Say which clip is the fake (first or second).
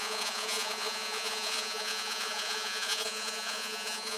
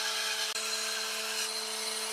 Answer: first